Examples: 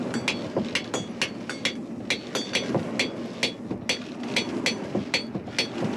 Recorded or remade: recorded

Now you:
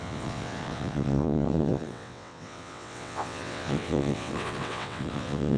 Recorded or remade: remade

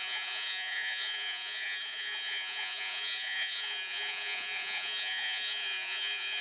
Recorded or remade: remade